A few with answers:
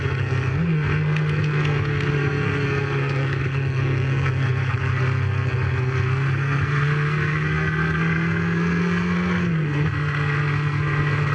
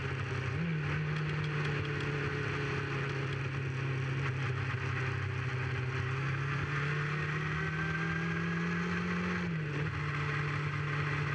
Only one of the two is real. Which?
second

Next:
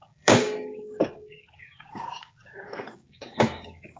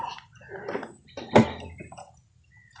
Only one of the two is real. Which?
second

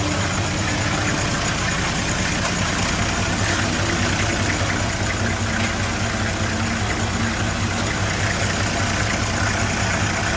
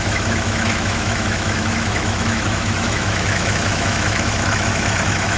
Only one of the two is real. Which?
first